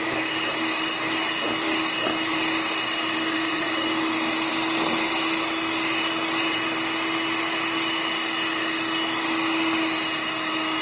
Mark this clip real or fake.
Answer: real